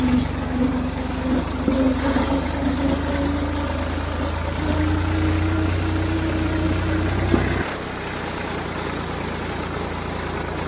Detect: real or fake real